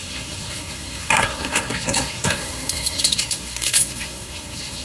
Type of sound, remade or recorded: remade